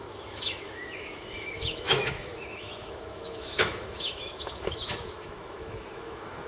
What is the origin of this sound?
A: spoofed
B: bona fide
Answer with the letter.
A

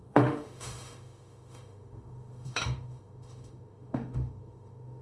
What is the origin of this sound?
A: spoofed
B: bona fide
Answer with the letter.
A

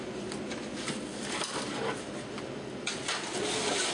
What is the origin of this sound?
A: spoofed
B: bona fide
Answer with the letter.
B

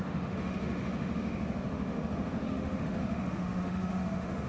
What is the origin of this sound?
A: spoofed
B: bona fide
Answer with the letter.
A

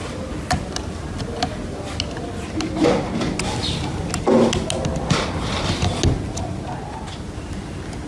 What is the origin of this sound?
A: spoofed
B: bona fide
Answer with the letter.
B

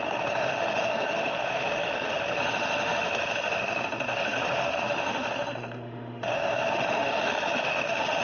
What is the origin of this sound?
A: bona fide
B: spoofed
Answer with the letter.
B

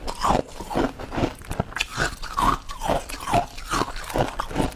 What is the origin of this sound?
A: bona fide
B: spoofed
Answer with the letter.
A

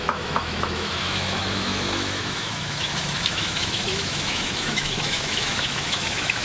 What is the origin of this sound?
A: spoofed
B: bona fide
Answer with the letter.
A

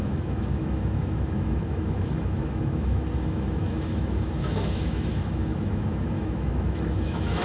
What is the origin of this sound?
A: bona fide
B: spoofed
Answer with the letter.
B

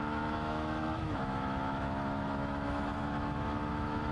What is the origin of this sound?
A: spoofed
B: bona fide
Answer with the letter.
A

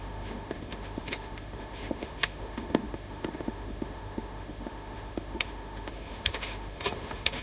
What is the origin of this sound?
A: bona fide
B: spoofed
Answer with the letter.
B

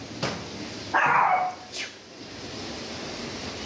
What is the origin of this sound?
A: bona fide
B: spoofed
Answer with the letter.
A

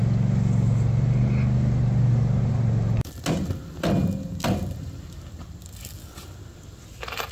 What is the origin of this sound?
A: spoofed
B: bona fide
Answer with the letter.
B